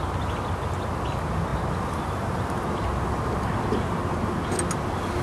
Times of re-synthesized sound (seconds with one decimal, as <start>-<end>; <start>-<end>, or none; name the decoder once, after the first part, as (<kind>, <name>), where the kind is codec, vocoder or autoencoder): none

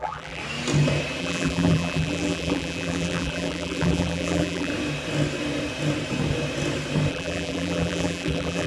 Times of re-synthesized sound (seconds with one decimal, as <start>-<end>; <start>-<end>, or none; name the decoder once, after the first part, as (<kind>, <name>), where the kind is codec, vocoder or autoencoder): 0.0-0.4 (vocoder, BigVGAN v2); 1.2-4.7; 7.1-8.7

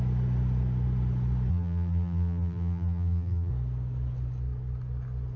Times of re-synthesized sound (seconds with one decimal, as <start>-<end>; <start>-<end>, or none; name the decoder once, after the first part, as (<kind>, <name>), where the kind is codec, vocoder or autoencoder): 1.5-3.5 (vocoder, BigVGAN v2)

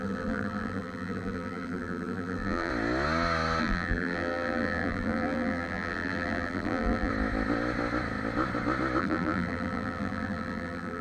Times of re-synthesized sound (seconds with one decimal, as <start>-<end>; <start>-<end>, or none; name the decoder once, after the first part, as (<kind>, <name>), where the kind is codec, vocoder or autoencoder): 0.0-2.7 (vocoder, BigVGAN v2); 3.6-7.1; 9.0-11.0

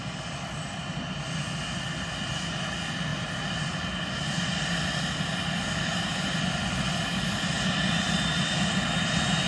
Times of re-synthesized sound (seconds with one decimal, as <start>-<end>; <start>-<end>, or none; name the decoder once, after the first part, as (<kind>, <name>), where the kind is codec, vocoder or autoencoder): none

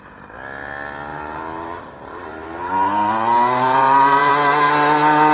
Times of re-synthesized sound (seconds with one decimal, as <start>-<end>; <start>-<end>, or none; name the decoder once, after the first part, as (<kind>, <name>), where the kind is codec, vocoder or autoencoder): 1.1-4.3 (vocoder, BigVGAN v2)